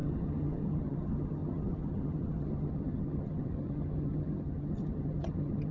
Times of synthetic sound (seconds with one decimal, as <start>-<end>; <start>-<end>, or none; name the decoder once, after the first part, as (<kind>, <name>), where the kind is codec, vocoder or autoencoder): 0.0-5.7 (vocoder, HiFi-GAN)